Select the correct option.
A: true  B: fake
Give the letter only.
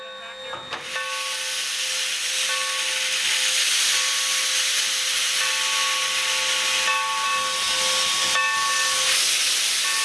A